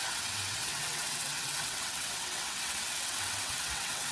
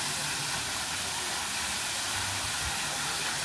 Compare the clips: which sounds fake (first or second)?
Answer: first